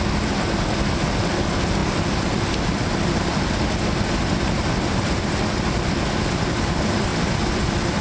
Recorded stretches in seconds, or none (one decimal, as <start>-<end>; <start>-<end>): 0.0-7.1